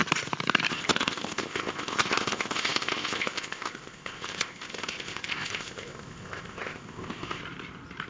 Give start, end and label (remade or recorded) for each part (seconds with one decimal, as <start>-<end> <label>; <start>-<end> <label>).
0.0-0.7 recorded; 0.7-7.4 remade; 7.4-8.1 recorded